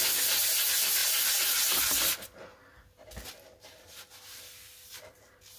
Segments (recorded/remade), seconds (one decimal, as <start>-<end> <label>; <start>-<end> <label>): 0.0-5.6 recorded